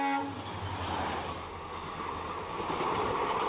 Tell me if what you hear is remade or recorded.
recorded